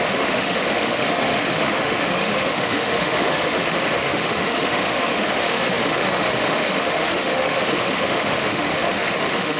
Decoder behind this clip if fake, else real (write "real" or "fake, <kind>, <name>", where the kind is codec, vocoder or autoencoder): fake, autoencoder, DAC-VAE